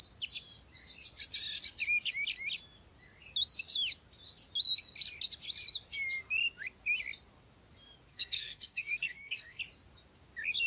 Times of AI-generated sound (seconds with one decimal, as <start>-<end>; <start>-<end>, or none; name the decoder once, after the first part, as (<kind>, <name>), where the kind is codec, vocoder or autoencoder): 8.1-9.6 (codec, SNAC)